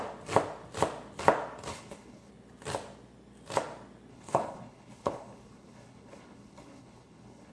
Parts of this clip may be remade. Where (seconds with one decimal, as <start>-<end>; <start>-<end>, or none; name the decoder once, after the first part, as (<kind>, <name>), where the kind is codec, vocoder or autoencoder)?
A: 1.7-2.3 (codec, HILCodec); 4.1-7.5